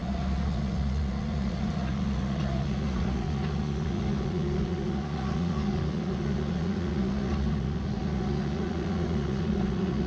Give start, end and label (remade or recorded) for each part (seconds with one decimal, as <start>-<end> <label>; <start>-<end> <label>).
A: 0.0-10.1 remade